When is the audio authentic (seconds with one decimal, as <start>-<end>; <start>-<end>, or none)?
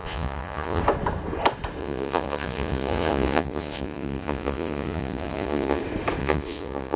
0.8-1.8; 5.8-6.2